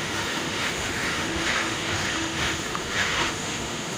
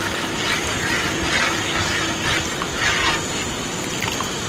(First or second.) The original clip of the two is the second